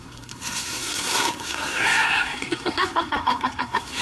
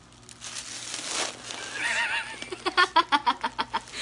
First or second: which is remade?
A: first